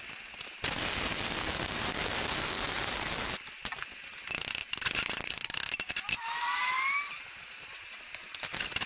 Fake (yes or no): no